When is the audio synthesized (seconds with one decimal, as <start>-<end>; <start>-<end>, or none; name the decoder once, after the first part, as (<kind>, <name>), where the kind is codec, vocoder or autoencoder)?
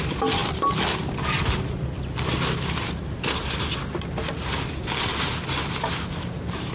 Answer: none